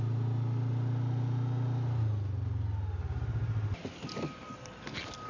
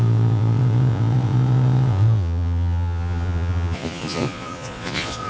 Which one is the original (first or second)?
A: first